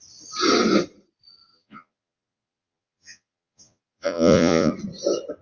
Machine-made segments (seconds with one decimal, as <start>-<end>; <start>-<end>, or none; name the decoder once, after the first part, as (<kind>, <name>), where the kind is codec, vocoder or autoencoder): 1.5-4.7 (vocoder, Vocos)